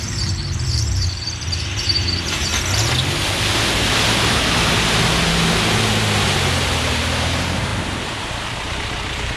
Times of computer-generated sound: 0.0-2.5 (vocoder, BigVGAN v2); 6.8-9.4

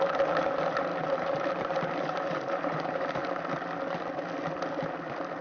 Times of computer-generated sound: 0.9-3.1 (vocoder, BigVGAN v2)

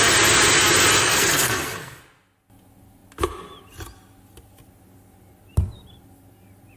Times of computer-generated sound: 1.0-2.0 (codec, SNAC)

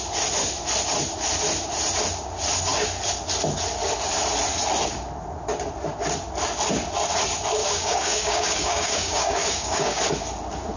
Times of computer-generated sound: 7.6-10.0 (codec, DAC)